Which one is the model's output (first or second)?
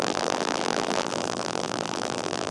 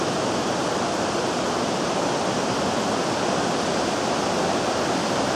first